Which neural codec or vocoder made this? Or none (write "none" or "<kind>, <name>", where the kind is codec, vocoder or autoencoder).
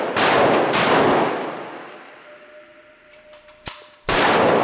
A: none